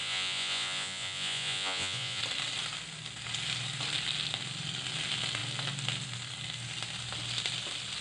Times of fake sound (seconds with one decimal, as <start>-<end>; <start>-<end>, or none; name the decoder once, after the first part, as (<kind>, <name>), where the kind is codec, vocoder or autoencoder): 0.0-2.2 (vocoder, Vocos)